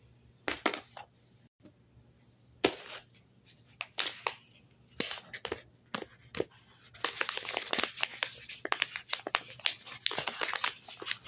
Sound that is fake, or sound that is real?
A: real